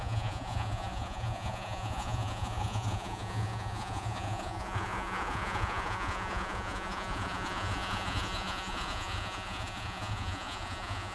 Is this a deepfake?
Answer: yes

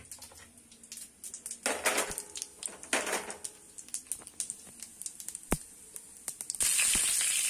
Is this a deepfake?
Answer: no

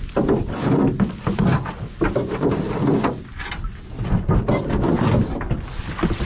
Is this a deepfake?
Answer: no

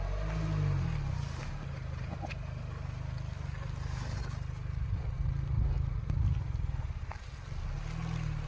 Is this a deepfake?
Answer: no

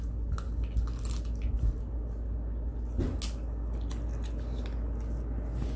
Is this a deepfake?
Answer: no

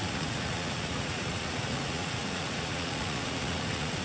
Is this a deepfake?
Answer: yes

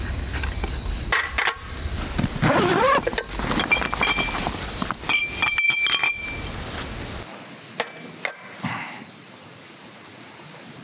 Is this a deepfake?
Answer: no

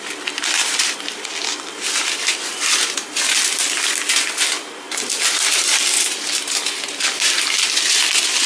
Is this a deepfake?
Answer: no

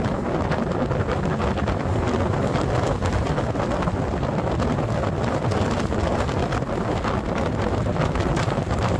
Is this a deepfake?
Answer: no